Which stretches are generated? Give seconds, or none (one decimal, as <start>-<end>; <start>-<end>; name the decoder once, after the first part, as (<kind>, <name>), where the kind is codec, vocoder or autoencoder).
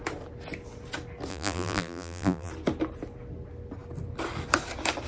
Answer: 1.3-2.5 (vocoder, BigVGAN v2)